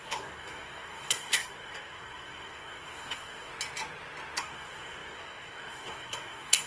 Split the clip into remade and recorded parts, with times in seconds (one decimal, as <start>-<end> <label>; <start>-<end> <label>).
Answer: 0.0-3.5 remade; 3.5-4.4 recorded; 4.4-6.7 remade